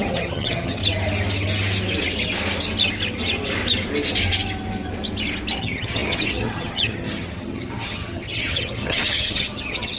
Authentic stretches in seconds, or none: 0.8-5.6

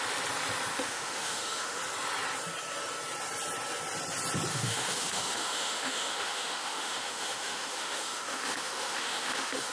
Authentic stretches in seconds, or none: 0.0-0.7; 1.8-4.5

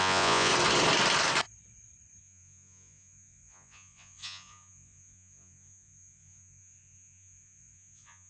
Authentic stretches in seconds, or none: 0.5-2.2